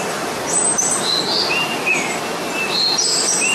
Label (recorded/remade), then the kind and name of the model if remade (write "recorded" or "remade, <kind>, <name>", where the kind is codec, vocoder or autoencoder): recorded